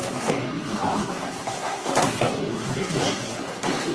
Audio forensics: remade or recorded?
remade